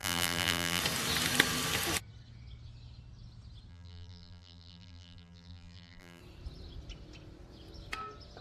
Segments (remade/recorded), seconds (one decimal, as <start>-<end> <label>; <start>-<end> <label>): 0.0-0.8 remade; 0.8-3.7 recorded; 3.7-6.2 remade; 6.2-8.4 recorded

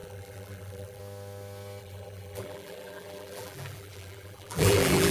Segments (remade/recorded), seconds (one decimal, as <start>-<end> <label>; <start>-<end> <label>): 0.0-1.0 remade; 1.0-1.8 recorded; 1.8-5.1 remade

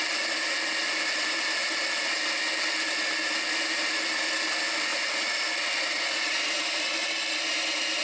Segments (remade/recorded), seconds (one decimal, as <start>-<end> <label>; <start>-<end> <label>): 0.0-4.9 recorded; 4.9-8.0 remade

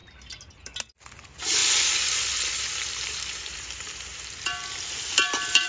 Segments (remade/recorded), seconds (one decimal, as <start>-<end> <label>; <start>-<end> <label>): 0.0-0.5 remade; 0.5-1.6 recorded; 1.6-4.3 remade; 4.3-5.7 recorded

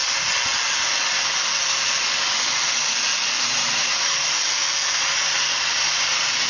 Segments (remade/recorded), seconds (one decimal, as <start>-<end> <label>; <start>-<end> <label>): 0.0-3.6 recorded; 3.6-4.5 remade; 4.5-6.5 recorded